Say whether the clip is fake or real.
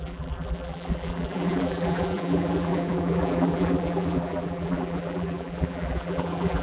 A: fake